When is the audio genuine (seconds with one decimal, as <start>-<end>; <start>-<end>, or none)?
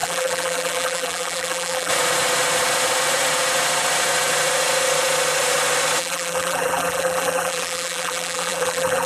1.9-6.0